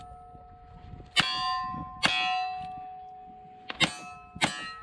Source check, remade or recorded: recorded